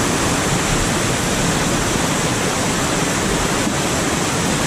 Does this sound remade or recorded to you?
recorded